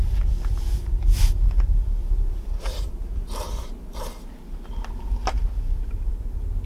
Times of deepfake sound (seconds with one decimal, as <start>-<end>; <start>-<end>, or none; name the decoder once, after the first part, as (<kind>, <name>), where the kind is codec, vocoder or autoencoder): 5.2-6.1 (vocoder, BigVGAN v2)